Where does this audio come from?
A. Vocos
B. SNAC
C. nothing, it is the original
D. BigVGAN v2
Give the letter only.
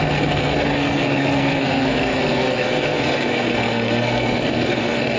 B